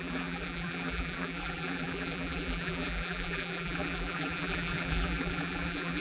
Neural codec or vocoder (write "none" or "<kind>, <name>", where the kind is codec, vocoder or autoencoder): vocoder, BigVGAN v2